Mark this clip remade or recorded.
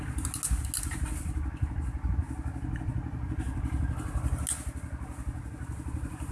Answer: recorded